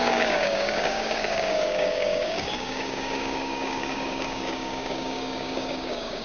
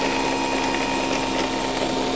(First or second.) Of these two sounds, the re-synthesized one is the first